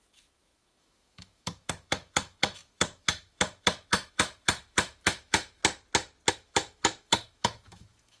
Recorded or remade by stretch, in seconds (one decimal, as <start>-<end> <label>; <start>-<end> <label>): 0.0-5.6 remade; 5.6-6.3 recorded; 6.3-8.2 remade